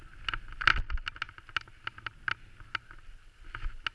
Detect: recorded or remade recorded